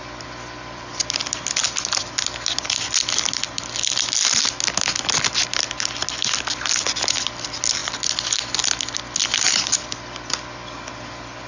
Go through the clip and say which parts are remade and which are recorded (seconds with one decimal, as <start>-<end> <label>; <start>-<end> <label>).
0.0-11.5 recorded